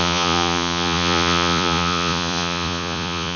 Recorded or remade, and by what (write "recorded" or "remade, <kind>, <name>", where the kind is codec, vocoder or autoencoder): remade, vocoder, Vocos